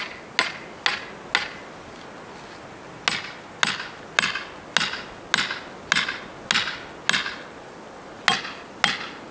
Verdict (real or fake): real